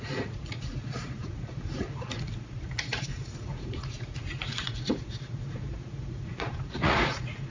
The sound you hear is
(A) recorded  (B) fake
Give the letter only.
B